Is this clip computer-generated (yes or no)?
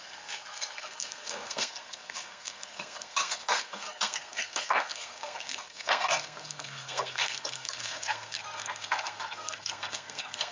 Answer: yes